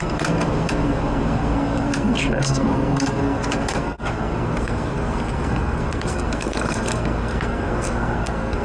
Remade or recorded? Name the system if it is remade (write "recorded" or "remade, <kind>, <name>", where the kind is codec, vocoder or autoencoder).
remade, codec, SNAC